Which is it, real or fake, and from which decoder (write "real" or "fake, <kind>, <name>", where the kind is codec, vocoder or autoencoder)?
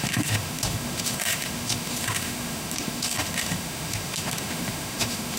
fake, autoencoder, DAC-VAE